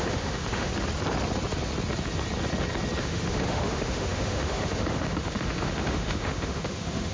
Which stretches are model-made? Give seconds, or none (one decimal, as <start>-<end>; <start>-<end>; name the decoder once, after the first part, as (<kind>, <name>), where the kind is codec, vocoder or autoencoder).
0.0-0.7 (autoencoder, DAC-VAE); 3.0-7.1